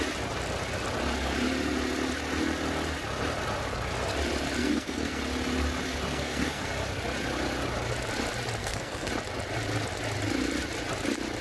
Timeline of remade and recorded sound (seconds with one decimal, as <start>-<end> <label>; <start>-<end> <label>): 0.0-4.6 recorded; 4.6-5.2 remade; 5.2-6.1 recorded; 6.1-6.7 remade; 6.7-8.6 recorded; 8.6-9.1 remade; 9.1-11.4 recorded

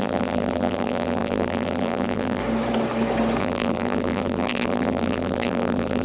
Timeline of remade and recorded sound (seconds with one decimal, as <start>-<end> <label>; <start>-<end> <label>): 0.0-2.4 remade; 2.4-3.4 recorded; 3.4-6.0 remade

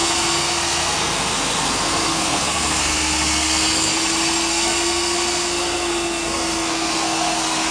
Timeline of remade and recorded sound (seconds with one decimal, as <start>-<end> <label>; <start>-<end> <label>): 0.0-3.9 remade; 3.9-4.5 recorded; 4.5-7.7 remade

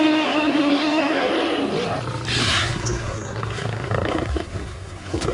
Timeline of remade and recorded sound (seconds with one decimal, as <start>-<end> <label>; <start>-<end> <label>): 0.0-1.3 remade; 1.3-2.4 recorded; 2.4-5.3 remade

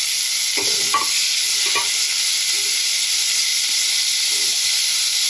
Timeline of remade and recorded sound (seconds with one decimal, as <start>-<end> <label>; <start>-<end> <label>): 0.0-5.3 recorded

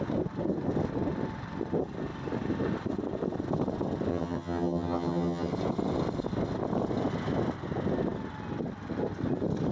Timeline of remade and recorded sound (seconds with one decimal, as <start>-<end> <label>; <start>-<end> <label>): 0.0-4.1 recorded; 4.1-5.5 remade; 5.5-9.7 recorded

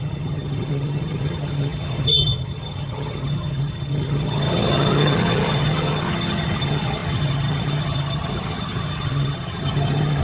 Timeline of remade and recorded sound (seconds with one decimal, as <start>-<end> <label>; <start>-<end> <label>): 0.0-10.2 remade

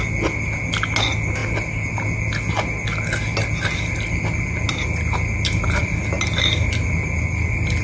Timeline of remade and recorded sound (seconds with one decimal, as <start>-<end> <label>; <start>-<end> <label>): 0.0-7.8 recorded